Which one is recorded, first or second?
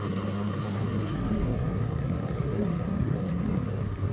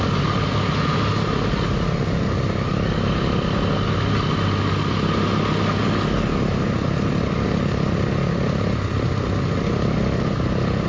second